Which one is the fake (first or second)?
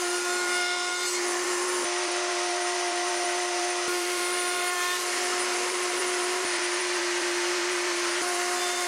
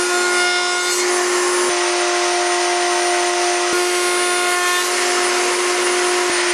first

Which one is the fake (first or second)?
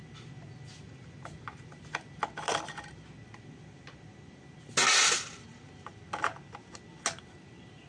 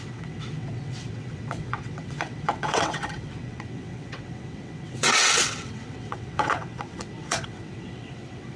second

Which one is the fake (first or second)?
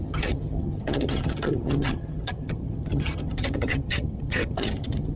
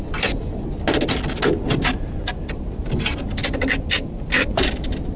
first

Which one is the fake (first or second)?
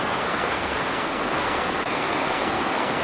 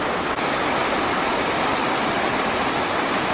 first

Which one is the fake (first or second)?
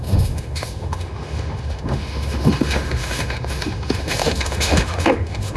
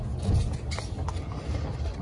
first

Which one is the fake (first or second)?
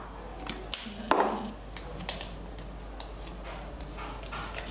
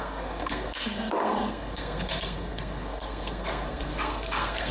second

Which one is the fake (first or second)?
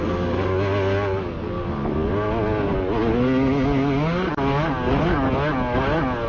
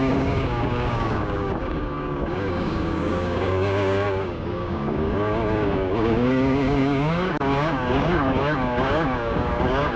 second